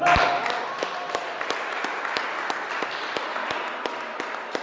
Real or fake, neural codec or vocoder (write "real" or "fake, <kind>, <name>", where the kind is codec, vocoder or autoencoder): real